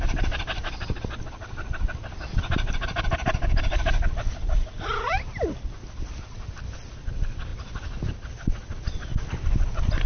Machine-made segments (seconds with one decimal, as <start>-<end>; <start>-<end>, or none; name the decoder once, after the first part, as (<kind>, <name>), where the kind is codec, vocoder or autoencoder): 4.4-5.1 (vocoder, Vocos)